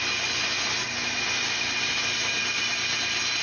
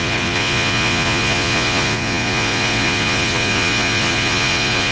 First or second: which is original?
first